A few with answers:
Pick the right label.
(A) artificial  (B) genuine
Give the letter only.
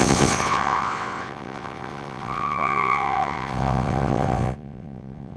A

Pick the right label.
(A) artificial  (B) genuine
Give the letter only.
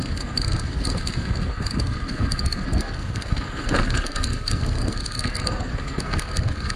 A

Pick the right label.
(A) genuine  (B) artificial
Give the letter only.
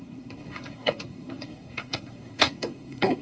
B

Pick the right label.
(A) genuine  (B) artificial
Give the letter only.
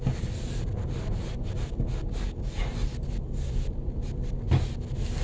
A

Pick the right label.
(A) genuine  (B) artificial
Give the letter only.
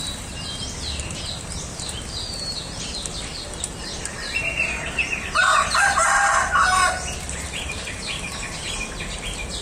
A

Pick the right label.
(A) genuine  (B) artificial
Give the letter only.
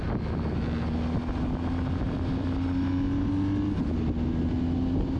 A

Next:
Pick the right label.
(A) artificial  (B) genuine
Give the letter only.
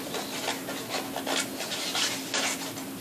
B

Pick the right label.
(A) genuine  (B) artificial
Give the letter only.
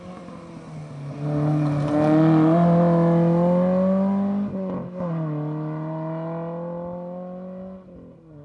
A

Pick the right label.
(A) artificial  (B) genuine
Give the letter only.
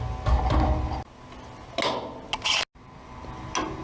B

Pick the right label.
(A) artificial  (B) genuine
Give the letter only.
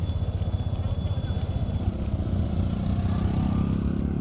B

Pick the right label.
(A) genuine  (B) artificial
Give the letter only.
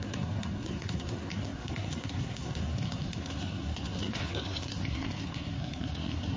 B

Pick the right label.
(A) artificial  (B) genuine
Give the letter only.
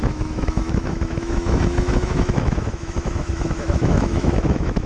A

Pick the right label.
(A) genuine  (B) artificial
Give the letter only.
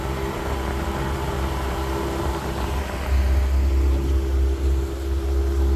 A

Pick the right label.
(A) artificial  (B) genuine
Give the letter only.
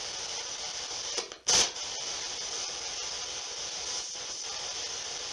A